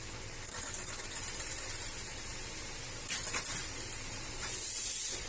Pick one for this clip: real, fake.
real